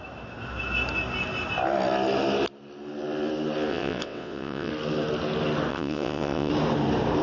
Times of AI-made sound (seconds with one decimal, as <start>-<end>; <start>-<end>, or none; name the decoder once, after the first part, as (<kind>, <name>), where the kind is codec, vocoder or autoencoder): 3.7-4.7 (vocoder, WaveNeXt); 5.7-6.5